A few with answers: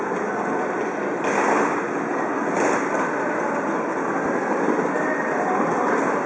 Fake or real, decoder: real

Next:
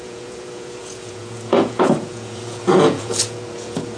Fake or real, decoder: fake, vocoder, Vocos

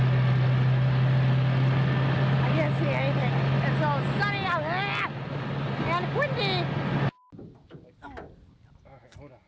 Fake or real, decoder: real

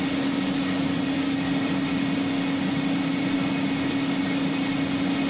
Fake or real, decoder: real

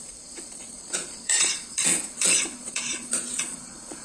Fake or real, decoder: fake, vocoder, Vocos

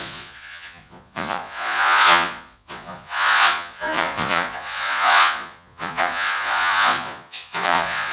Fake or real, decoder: fake, vocoder, Vocos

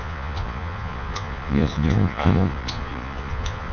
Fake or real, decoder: fake, vocoder, Vocos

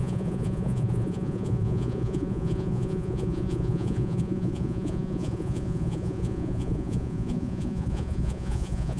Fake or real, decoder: fake, vocoder, Vocos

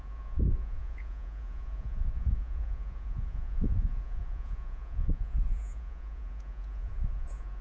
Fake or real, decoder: fake, vocoder, Vocos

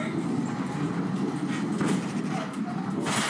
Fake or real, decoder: real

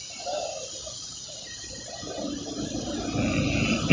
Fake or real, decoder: real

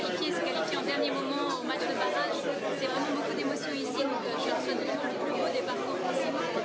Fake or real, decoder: real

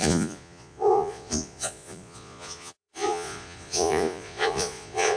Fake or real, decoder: fake, vocoder, Vocos